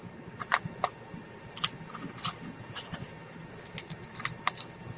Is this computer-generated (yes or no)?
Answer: yes